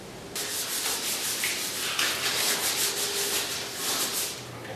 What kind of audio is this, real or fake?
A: real